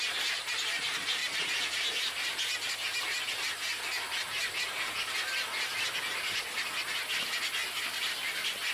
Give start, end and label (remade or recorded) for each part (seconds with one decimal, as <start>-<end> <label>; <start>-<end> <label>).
0.0-8.7 recorded